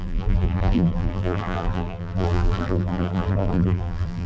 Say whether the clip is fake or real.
fake